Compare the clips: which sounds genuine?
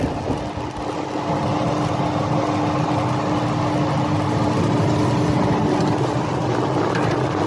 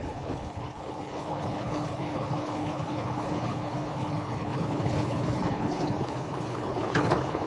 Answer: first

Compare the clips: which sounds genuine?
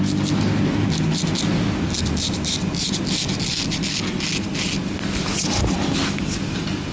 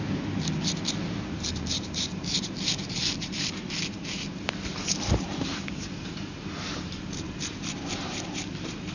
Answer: first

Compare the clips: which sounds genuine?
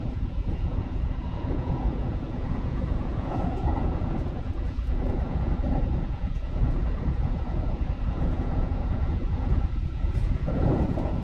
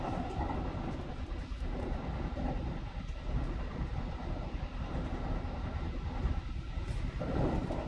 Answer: second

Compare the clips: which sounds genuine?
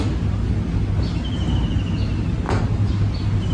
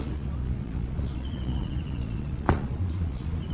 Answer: first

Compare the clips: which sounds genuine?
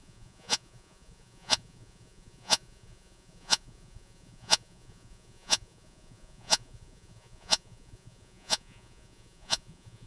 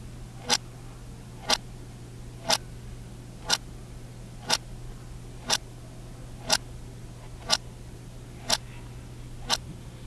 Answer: second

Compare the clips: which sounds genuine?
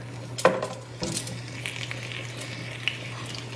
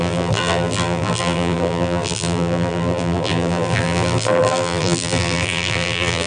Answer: first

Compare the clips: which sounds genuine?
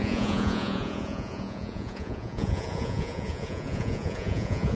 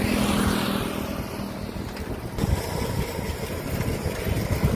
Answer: second